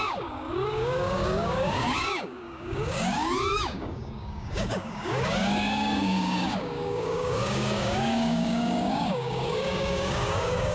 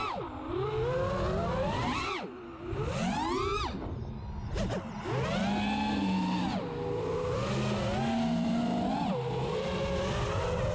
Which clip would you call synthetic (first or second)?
first